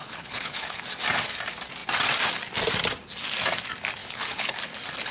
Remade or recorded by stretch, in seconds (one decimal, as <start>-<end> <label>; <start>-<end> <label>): 0.0-0.8 remade; 0.8-4.0 recorded; 4.0-4.6 remade; 4.6-5.1 recorded